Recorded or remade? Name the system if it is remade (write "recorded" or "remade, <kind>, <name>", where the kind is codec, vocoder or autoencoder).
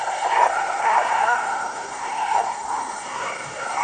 remade, codec, SNAC